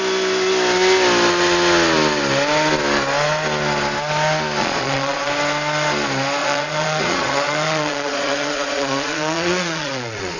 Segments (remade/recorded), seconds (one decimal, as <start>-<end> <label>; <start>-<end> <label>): 0.0-4.6 recorded; 4.6-5.3 remade; 5.3-6.4 recorded; 6.4-10.4 remade